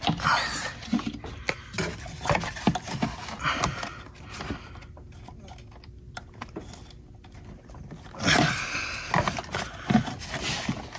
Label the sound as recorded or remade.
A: recorded